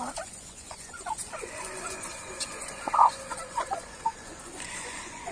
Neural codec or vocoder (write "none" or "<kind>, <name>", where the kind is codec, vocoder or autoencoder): vocoder, Vocos